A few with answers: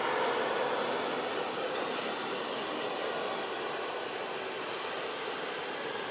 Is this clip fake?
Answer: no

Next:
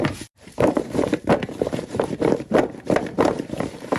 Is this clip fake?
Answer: yes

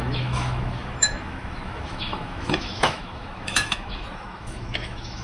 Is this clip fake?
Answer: yes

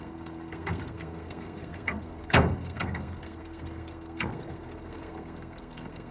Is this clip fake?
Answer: yes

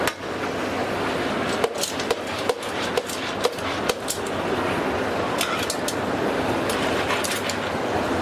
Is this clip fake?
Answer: no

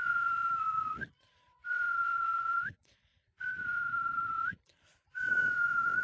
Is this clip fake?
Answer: yes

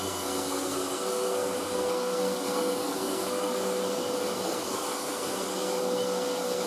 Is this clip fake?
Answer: yes